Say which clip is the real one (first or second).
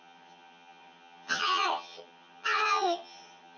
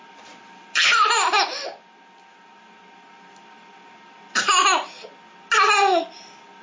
second